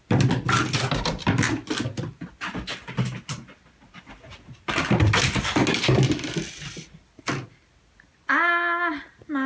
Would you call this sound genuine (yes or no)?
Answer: yes